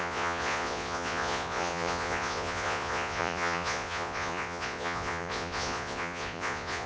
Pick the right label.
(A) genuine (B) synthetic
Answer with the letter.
B